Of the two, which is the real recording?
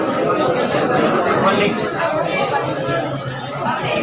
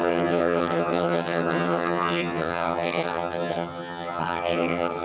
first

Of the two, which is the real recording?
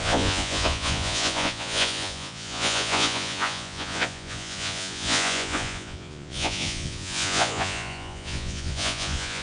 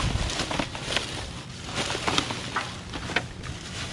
second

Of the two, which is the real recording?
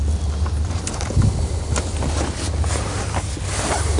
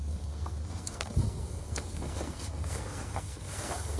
first